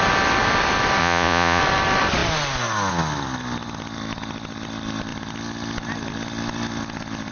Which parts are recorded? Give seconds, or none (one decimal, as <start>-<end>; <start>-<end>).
0.0-1.0; 1.6-7.3